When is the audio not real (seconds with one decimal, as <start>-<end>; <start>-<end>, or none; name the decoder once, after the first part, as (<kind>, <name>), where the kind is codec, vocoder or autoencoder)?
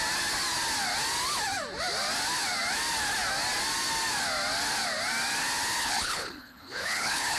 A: 5.8-7.4 (codec, HILCodec)